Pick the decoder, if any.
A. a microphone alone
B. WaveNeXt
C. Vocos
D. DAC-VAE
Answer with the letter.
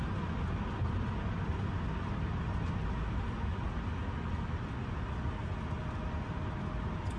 A